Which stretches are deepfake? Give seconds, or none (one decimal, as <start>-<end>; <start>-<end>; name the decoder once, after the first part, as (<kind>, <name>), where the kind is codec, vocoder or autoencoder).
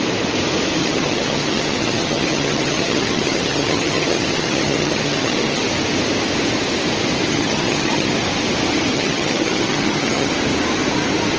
0.8-5.6 (vocoder, HiFi-GAN); 7.3-8.1; 8.9-10.3